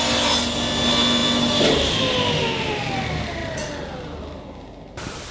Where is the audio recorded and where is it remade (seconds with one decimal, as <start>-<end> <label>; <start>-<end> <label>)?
0.0-5.3 recorded